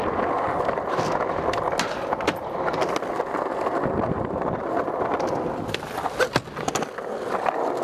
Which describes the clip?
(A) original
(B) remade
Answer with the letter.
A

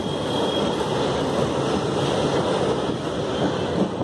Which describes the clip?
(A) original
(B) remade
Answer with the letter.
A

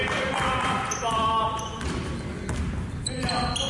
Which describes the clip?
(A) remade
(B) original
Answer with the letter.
B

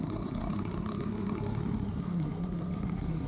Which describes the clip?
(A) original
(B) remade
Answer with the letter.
B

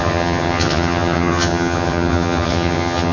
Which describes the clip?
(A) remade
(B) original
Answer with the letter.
A